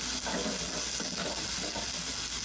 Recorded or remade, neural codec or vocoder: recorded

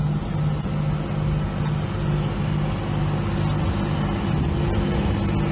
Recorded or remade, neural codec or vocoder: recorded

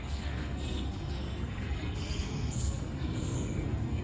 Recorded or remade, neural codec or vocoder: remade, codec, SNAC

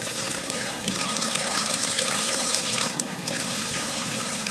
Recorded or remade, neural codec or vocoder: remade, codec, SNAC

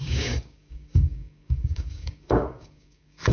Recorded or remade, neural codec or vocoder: remade, codec, DAC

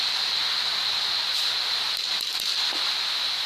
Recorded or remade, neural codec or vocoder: recorded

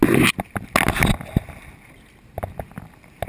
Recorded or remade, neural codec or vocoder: recorded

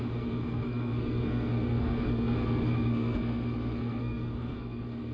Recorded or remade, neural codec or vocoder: remade, codec, SNAC